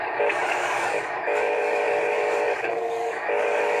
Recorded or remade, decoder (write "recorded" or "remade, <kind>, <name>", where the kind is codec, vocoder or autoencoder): remade, codec, DAC